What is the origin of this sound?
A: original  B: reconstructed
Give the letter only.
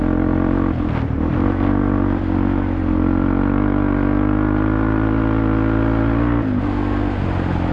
A